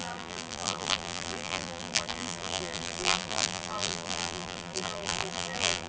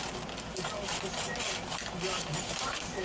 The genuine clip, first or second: second